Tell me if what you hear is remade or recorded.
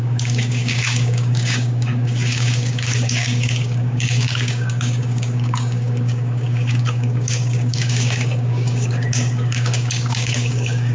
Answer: remade